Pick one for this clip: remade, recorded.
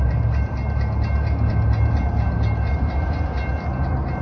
recorded